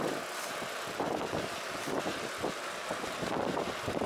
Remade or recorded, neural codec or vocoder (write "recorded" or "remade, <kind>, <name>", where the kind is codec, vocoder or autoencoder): recorded